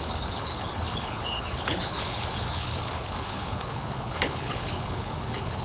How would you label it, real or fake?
fake